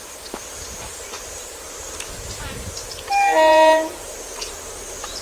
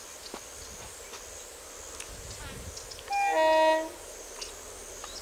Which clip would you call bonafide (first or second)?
second